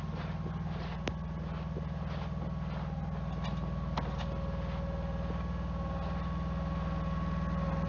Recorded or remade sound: recorded